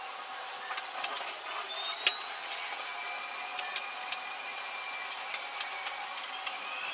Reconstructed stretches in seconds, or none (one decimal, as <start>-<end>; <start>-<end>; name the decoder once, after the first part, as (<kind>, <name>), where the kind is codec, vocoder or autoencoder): 2.2-2.9 (vocoder, WaveNeXt)